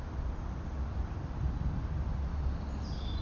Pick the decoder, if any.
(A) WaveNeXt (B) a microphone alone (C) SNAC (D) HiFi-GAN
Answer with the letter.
B